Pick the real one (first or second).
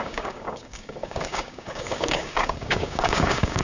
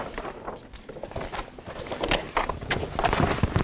second